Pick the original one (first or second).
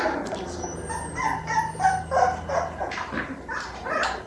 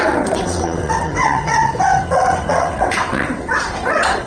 first